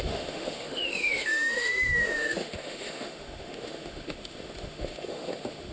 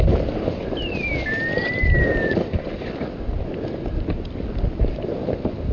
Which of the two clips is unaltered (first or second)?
second